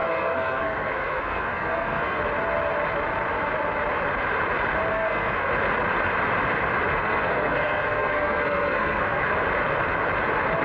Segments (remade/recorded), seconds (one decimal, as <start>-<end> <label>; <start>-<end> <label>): 0.0-2.2 remade; 2.2-4.9 recorded; 4.9-5.5 remade; 5.5-7.0 recorded; 7.0-9.2 remade; 9.2-10.6 recorded